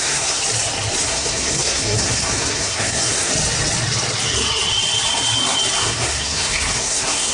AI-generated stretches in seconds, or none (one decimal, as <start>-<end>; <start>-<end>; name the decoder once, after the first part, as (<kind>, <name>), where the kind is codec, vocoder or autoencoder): 0.0-0.4 (codec, SNAC); 1.0-3.3; 5.8-7.3